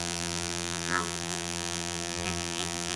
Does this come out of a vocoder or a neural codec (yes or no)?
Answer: yes